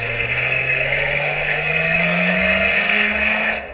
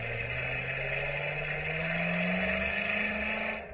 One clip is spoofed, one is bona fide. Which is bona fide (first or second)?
second